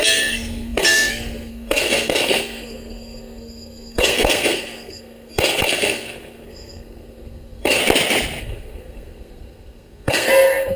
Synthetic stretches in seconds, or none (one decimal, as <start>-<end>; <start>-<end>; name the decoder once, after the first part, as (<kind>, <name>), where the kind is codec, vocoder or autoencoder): 0.0-7.8 (codec, SNAC); 8.4-10.8